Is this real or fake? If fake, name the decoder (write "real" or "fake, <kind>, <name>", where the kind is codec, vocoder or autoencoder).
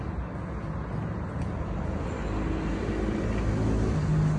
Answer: real